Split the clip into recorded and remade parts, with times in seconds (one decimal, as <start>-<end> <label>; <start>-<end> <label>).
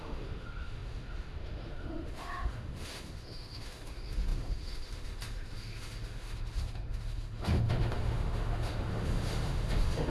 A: 0.0-10.1 remade